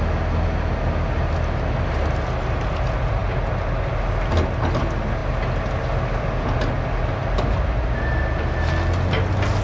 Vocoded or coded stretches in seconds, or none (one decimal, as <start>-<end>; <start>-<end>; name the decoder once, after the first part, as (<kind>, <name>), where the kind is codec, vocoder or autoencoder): none